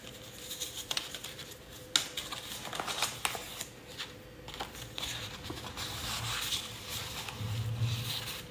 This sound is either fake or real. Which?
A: real